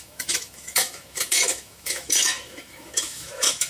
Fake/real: fake